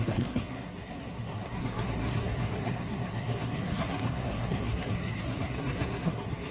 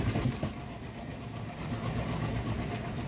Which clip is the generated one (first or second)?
first